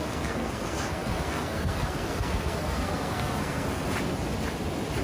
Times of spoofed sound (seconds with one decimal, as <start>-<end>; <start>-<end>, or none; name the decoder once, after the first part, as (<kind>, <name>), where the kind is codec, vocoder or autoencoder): 0.0-3.8 (codec, SNAC)